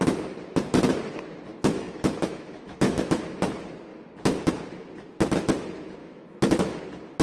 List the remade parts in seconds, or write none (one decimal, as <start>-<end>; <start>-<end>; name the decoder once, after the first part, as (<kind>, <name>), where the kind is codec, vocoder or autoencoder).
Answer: 1.5-3.2 (autoencoder, DAC-VAE); 6.0-6.8